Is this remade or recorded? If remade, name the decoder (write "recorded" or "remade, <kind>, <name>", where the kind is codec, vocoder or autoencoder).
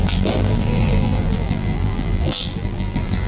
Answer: remade, vocoder, BigVGAN v2